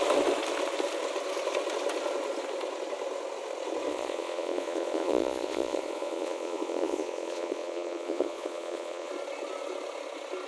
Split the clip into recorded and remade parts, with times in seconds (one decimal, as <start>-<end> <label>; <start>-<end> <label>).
0.0-3.9 recorded; 3.9-9.1 remade; 9.1-10.5 recorded

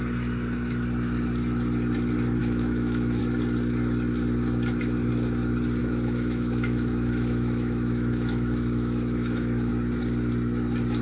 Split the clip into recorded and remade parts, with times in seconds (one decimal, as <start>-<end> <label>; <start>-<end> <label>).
0.0-2.4 recorded; 2.4-3.2 remade; 3.2-5.8 recorded; 5.8-9.7 remade; 9.7-11.0 recorded

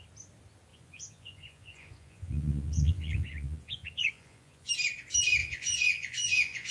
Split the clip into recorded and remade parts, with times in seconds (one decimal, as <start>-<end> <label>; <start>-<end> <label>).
0.0-0.7 recorded; 0.7-4.7 remade; 4.7-5.4 recorded; 5.4-6.7 remade

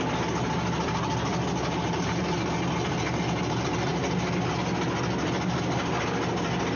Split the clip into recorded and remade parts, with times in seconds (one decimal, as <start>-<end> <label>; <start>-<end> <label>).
0.0-6.8 recorded